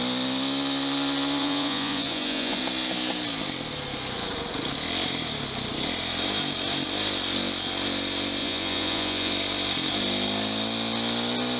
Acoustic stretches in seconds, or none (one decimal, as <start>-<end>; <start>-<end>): 0.0-1.4; 2.6-8.4; 9.3-11.6